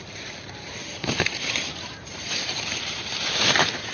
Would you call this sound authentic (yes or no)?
no